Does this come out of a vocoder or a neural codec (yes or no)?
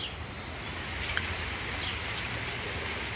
no